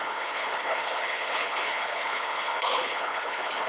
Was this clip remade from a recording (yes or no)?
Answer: yes